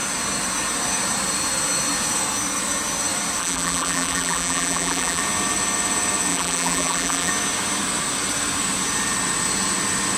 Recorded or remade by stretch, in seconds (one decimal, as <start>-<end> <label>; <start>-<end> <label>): 0.0-3.4 recorded; 3.4-5.2 remade; 5.2-6.3 recorded; 6.3-7.3 remade; 7.3-10.2 recorded